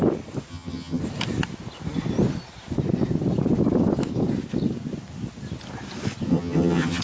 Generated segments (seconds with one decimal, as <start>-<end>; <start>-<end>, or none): 0.5-1.0; 6.3-7.0